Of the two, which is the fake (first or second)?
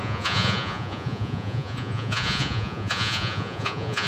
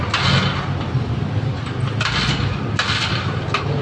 first